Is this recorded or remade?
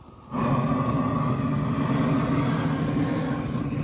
recorded